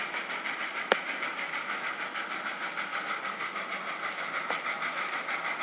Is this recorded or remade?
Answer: recorded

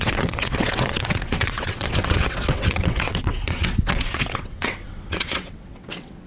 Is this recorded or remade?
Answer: remade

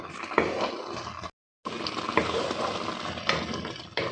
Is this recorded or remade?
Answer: recorded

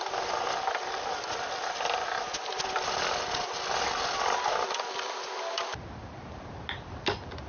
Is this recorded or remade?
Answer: recorded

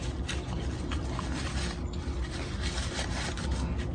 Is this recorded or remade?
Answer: recorded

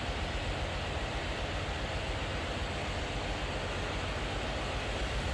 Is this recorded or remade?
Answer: recorded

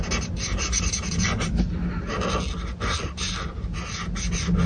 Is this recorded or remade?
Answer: recorded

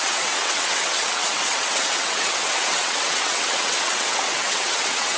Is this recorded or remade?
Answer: remade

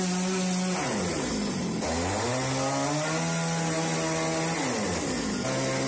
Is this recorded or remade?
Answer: recorded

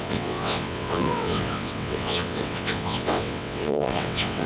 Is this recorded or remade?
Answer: remade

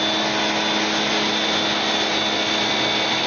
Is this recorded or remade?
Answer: recorded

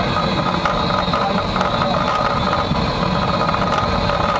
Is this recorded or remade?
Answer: recorded